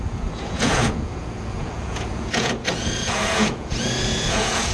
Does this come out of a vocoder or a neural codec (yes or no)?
yes